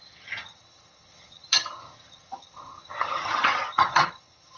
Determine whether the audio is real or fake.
fake